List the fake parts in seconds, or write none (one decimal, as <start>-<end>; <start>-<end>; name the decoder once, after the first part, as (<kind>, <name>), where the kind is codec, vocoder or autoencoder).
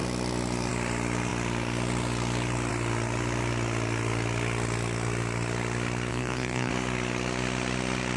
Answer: 6.1-6.7 (codec, SNAC)